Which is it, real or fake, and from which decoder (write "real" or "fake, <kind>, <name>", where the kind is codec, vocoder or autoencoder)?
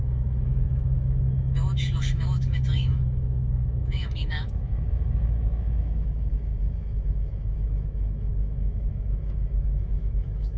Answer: fake, autoencoder, DAC-VAE